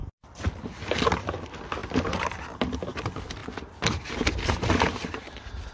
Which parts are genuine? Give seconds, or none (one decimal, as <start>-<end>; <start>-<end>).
0.6-5.7